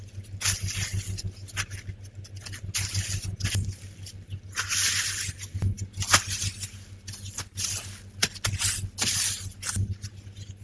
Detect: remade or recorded recorded